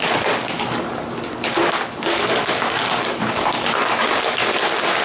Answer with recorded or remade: remade